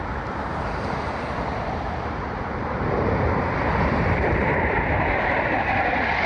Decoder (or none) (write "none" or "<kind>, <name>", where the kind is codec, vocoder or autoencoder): vocoder, BigVGAN v2